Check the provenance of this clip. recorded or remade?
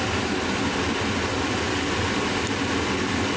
recorded